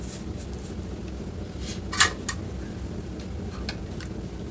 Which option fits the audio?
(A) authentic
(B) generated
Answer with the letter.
A